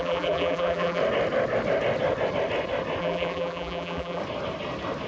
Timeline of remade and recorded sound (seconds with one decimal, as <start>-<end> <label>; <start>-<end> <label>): 0.0-1.0 remade; 1.0-3.0 recorded; 3.0-4.2 remade; 4.2-5.1 recorded